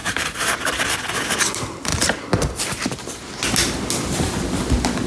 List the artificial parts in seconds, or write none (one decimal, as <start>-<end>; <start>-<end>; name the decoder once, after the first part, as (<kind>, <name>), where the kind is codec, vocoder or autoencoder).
0.0-0.8 (vocoder, BigVGAN v2)